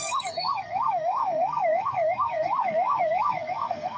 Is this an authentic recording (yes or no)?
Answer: no